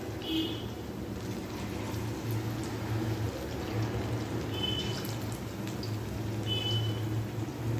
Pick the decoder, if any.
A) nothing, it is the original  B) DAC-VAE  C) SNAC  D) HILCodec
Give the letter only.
A